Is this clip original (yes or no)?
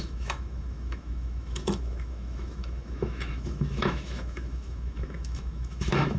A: no